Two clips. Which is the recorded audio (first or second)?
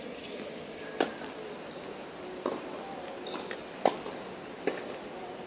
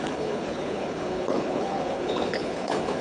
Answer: first